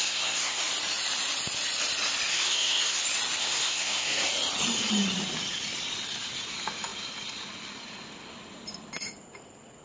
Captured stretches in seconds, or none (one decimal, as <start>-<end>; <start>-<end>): 0.6-2.3; 3.0-3.4; 4.3-9.8